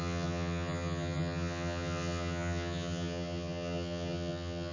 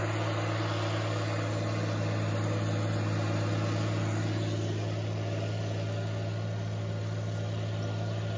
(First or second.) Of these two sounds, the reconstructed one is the first